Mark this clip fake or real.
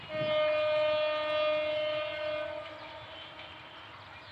real